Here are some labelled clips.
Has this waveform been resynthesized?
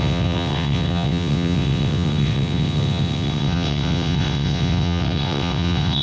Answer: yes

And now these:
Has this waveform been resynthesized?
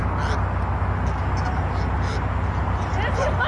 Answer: no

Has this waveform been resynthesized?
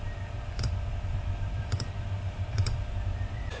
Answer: yes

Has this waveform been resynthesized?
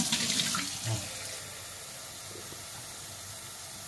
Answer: no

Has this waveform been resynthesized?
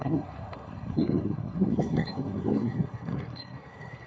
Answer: yes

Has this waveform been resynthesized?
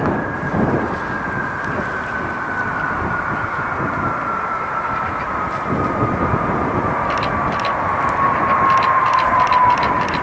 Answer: no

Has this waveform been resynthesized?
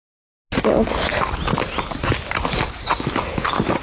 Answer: no